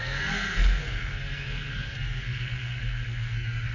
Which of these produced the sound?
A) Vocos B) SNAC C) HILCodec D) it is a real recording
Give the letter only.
B